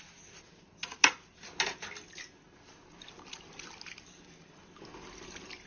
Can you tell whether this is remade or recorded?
recorded